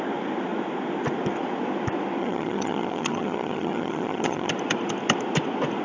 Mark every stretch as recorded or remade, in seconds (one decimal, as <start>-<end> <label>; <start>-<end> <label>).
0.0-2.2 recorded; 2.2-4.5 remade; 4.5-5.8 recorded